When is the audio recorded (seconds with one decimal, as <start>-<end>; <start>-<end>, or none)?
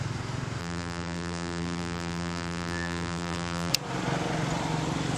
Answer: 0.0-0.6; 3.7-5.2